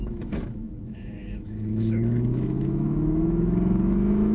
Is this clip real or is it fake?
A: fake